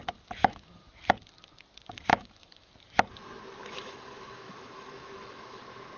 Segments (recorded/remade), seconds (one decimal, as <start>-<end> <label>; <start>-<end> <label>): 0.0-0.4 recorded; 0.4-0.9 remade; 0.9-2.1 recorded; 2.1-2.7 remade; 2.7-3.6 recorded; 3.6-5.6 remade; 5.6-6.0 recorded